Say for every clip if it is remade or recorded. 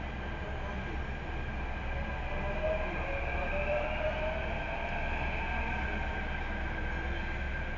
recorded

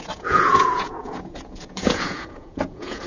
remade